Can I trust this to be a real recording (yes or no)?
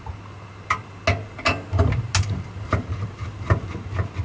yes